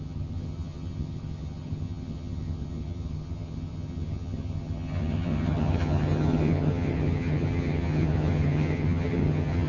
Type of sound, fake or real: fake